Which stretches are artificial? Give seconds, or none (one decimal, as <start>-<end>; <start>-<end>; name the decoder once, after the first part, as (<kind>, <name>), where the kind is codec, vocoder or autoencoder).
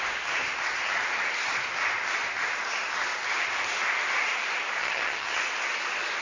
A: 4.8-5.4 (vocoder, HiFi-GAN)